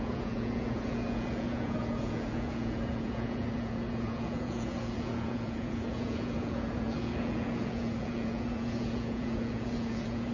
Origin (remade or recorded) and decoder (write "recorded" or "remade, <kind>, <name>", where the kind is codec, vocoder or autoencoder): remade, vocoder, Vocos